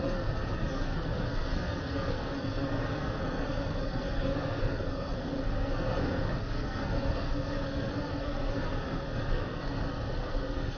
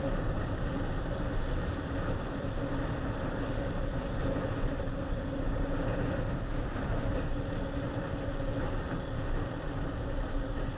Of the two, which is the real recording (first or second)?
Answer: second